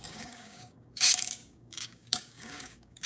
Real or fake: fake